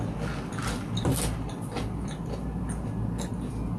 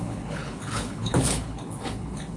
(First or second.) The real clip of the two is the first